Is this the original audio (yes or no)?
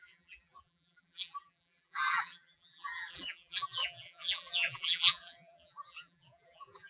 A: no